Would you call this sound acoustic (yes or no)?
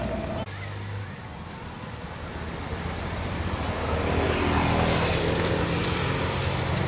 yes